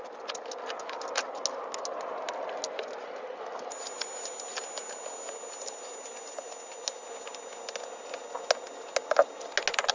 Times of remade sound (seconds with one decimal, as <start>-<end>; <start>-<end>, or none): none